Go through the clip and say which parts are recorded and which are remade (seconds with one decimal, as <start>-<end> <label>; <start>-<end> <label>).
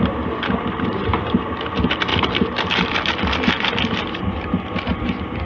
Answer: 0.0-2.1 remade; 2.1-4.2 recorded; 4.2-5.5 remade